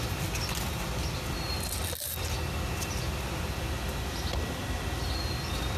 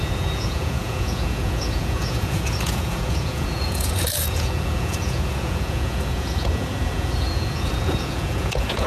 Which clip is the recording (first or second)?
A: first